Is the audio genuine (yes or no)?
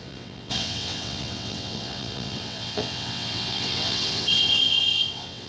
no